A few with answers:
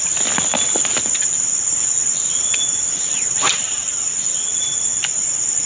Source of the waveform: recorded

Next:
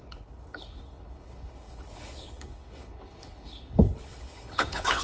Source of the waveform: remade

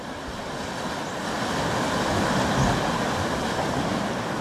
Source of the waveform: recorded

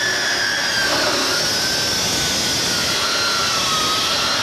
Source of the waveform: recorded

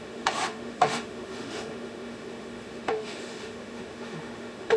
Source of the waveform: remade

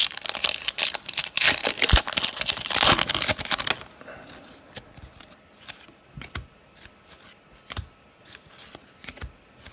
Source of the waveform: recorded